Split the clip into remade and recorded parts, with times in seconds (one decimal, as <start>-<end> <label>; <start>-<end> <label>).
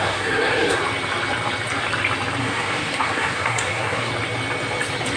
0.0-0.8 remade; 0.8-2.4 recorded; 2.4-4.1 remade; 4.1-5.2 recorded